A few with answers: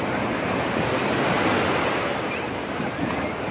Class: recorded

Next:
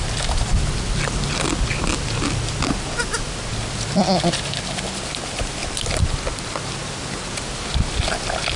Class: recorded